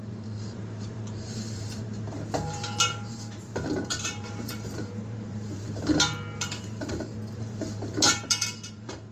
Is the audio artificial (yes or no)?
yes